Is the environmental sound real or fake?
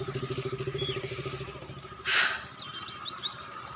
fake